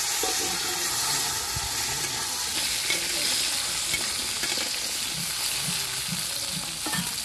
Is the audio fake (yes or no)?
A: no